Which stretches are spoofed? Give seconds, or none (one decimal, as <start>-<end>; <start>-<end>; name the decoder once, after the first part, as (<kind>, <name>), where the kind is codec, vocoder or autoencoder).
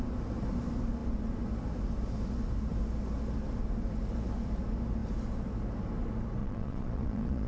6.4-7.5 (vocoder, Vocos)